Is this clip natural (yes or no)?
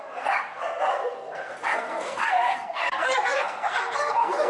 no